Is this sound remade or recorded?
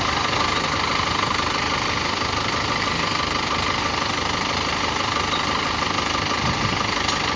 recorded